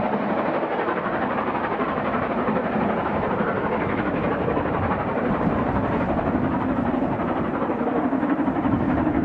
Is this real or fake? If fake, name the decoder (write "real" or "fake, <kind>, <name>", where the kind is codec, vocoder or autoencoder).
fake, vocoder, BigVGAN v2